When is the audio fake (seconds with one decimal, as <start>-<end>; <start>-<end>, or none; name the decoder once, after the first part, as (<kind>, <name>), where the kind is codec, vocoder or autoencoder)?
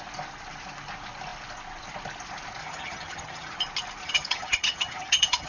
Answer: 2.6-3.6 (vocoder, HiFi-GAN); 4.0-5.5